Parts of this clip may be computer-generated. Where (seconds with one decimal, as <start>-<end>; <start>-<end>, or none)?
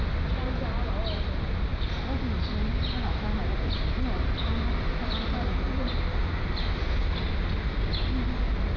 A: none